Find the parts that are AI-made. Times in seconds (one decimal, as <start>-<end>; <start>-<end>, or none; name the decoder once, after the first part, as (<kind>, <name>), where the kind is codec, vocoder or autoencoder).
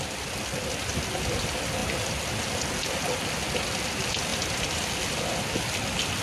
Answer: 4.3-5.2 (vocoder, BigVGAN v2)